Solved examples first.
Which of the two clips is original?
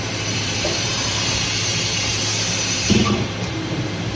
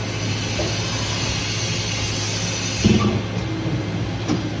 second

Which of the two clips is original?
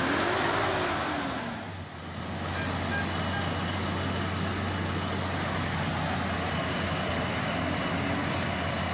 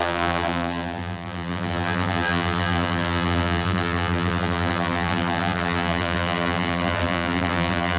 first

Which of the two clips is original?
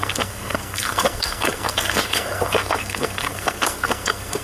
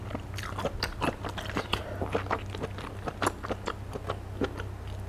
second